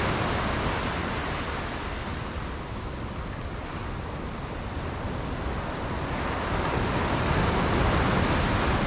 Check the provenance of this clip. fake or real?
real